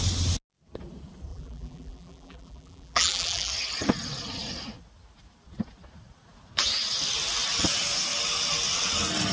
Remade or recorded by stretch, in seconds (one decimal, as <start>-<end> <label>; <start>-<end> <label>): 0.0-1.3 recorded; 1.3-3.5 remade; 3.5-9.3 recorded